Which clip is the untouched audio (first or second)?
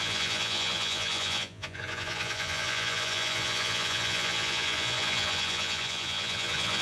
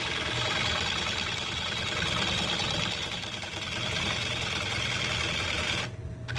second